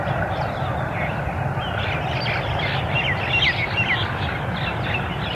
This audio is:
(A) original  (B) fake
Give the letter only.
A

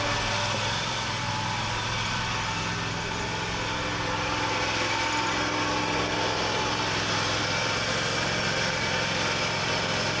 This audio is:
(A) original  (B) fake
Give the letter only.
A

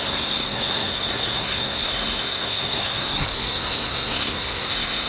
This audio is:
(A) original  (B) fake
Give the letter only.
B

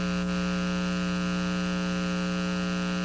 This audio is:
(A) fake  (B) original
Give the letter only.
B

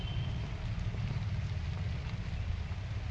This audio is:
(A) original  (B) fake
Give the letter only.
A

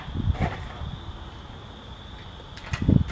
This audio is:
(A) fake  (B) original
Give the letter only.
B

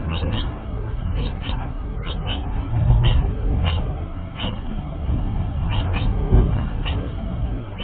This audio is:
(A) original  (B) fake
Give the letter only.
B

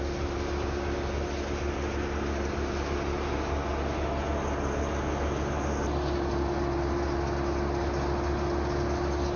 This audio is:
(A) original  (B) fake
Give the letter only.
A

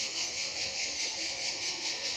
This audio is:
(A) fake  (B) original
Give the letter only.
A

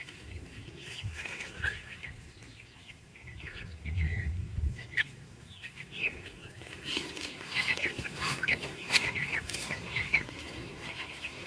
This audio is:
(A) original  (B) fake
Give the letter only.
B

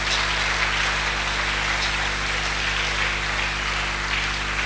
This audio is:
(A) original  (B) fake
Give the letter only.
A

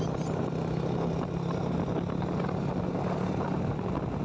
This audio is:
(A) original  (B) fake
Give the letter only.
A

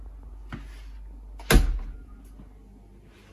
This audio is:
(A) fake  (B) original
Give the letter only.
B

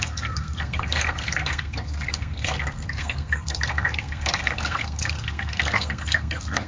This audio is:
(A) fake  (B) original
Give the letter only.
A